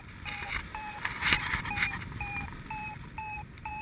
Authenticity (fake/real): fake